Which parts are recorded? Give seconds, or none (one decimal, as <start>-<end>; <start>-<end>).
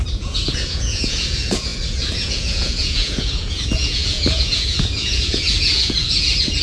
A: none